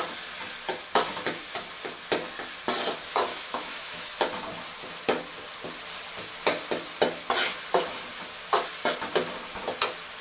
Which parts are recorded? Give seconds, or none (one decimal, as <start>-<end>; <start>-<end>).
0.0-3.3; 4.1-10.2